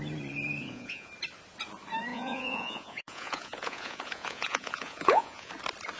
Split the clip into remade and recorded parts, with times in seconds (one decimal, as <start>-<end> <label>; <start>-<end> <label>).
0.0-0.6 recorded; 0.6-1.1 remade; 1.1-2.1 recorded; 2.1-5.5 remade; 5.5-6.0 recorded